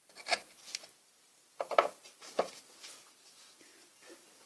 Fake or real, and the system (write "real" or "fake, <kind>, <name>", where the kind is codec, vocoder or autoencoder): real